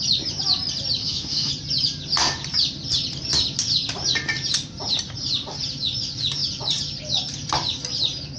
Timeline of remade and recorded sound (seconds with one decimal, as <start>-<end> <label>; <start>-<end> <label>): 0.0-1.0 recorded; 1.0-1.5 remade; 1.5-8.4 recorded